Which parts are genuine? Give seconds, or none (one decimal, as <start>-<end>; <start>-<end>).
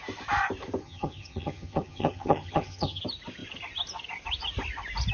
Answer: 0.0-0.8; 3.0-5.1